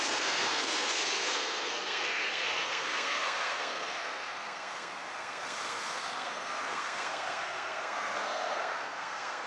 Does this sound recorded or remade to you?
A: remade